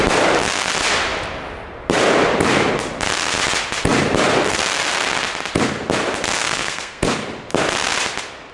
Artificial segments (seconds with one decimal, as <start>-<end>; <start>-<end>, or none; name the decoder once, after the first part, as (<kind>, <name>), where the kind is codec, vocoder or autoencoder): 6.4-7.0 (codec, SNAC)